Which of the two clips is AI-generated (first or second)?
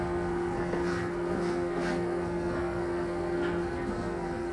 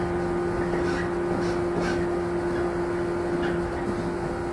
first